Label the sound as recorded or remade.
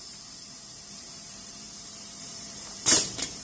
remade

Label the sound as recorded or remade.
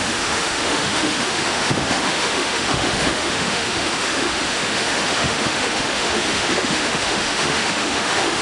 remade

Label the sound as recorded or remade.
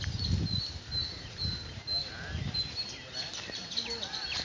recorded